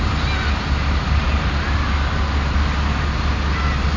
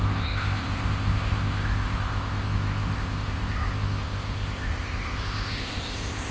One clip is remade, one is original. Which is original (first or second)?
first